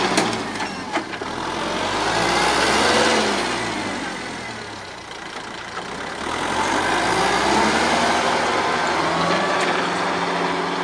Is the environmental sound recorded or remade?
recorded